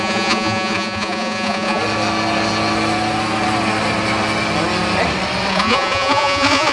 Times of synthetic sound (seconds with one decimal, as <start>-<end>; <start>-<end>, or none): 0.0-1.8; 5.5-6.7